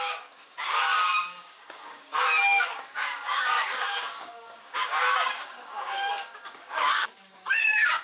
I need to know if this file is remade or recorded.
remade